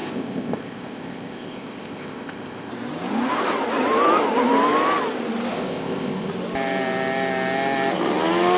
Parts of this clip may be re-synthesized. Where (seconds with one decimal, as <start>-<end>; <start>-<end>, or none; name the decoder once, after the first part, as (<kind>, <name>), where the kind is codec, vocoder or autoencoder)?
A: 0.0-2.7 (codec, ZipCodec); 5.5-6.3